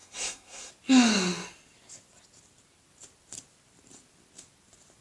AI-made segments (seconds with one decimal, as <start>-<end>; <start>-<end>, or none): 0.0-0.7